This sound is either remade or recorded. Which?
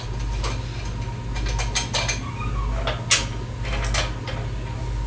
recorded